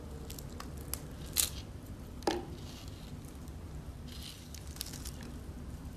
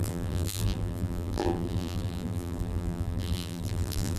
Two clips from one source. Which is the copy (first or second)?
second